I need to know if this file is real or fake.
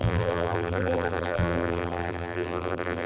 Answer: fake